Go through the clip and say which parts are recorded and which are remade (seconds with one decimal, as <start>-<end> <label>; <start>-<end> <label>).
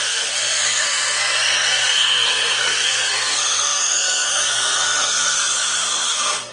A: 0.0-6.5 remade